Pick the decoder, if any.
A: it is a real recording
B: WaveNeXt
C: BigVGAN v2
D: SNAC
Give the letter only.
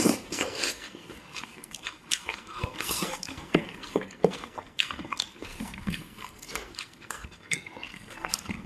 D